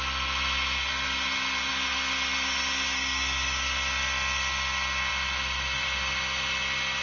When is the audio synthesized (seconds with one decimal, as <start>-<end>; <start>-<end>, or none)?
none